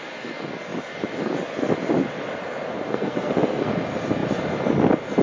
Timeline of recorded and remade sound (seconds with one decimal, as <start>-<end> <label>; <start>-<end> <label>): 0.0-2.9 recorded; 2.9-3.7 remade; 3.7-5.2 recorded